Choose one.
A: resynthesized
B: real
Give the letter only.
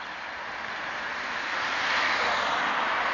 B